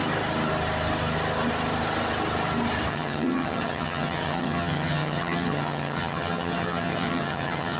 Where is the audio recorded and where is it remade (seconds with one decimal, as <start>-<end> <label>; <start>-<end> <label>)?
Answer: 0.0-2.9 recorded; 2.9-7.8 remade